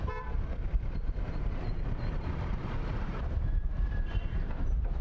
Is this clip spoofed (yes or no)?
yes